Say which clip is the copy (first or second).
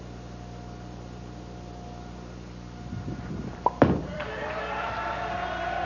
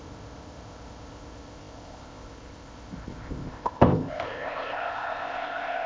second